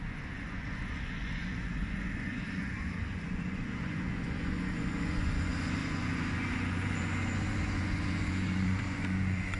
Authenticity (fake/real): fake